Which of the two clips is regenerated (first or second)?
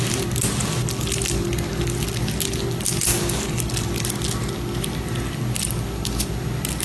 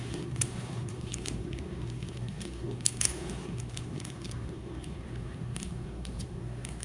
second